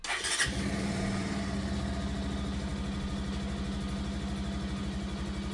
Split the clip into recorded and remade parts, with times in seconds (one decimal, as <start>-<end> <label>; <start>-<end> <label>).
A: 0.0-5.5 recorded